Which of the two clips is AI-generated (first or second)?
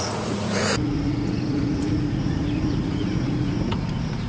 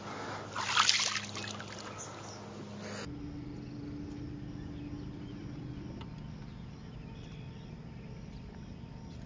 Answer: first